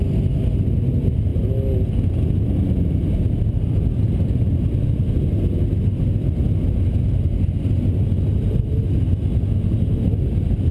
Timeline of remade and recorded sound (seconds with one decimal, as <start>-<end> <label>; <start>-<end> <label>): 0.0-10.7 recorded